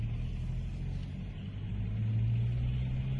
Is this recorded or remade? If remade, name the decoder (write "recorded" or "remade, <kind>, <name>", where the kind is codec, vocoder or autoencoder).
recorded